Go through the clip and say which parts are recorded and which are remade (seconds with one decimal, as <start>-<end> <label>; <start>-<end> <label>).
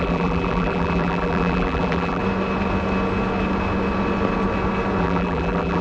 0.0-2.2 remade; 2.2-5.0 recorded; 5.0-5.8 remade